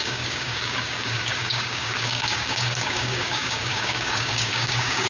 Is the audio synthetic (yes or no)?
yes